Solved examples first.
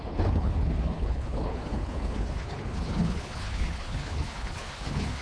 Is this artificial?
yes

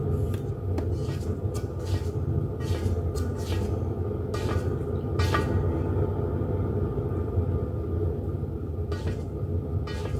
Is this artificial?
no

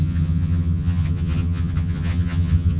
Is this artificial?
yes